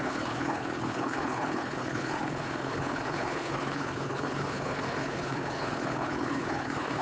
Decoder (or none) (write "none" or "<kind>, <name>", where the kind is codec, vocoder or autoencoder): codec, HILCodec